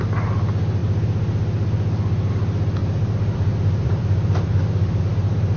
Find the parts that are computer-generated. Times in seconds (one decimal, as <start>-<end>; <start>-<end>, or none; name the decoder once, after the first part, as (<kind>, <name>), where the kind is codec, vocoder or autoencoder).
2.8-5.0 (vocoder, BigVGAN v2)